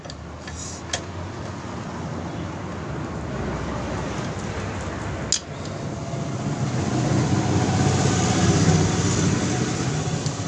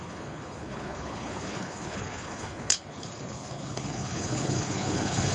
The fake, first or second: second